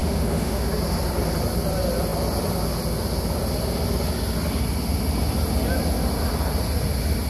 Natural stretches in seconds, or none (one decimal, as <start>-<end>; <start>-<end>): 0.7-7.3